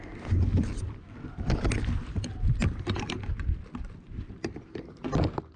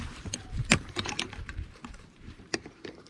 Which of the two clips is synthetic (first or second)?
second